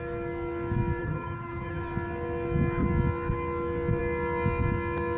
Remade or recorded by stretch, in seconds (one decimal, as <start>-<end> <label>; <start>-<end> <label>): 0.0-1.0 recorded; 1.0-1.8 remade; 1.8-5.2 recorded